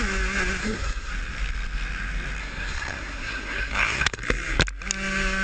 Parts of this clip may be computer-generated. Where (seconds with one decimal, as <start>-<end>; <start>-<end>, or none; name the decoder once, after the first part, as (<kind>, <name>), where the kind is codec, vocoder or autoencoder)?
0.6-1.1 (codec, SNAC); 2.4-4.2